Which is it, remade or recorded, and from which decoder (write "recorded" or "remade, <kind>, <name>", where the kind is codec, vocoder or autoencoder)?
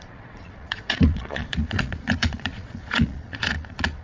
remade, vocoder, Vocos